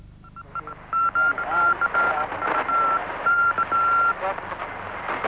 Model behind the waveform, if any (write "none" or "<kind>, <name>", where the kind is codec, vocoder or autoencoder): none